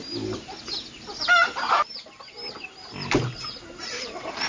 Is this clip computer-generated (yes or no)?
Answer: no